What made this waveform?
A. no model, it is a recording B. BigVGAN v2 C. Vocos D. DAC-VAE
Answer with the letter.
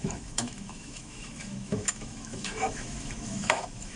D